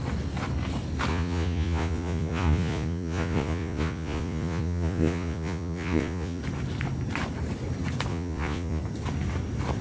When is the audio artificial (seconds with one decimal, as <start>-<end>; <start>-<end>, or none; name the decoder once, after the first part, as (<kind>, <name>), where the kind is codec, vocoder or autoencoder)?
1.1-6.4 (vocoder, Vocos); 8.1-8.8